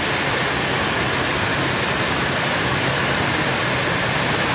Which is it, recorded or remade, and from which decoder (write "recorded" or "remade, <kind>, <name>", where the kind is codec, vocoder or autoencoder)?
recorded